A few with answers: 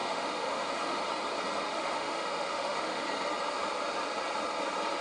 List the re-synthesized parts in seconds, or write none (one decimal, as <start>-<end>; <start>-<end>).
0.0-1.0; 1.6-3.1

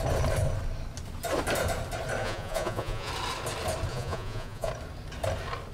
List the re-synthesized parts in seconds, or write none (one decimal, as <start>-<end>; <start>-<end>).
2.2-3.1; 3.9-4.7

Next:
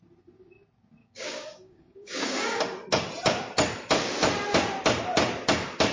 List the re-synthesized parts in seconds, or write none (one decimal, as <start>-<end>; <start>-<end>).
1.0-2.6

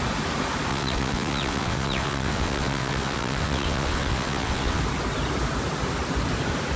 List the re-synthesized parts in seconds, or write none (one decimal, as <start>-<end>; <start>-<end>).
0.7-4.8

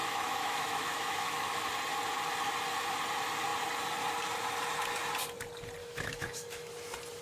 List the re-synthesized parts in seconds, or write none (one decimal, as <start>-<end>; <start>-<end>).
0.0-1.6; 5.8-6.7

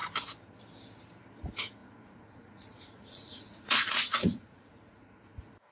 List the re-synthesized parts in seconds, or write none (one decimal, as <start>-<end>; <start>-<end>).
1.8-5.2

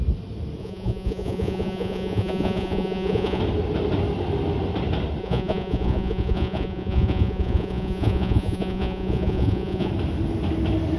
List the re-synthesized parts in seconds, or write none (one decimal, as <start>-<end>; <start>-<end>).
0.6-3.4; 5.2-9.9

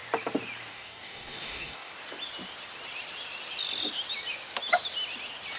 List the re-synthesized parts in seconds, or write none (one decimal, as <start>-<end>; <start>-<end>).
0.7-1.9